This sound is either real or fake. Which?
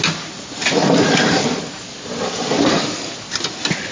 real